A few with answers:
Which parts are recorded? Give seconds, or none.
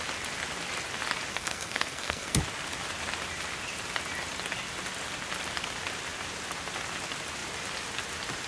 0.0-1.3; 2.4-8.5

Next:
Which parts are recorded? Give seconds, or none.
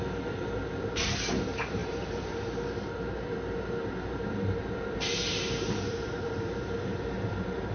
none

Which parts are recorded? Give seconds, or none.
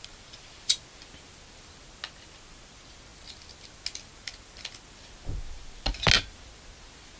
0.0-7.2